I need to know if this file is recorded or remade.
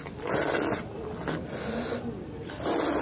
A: recorded